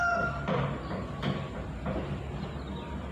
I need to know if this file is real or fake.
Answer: real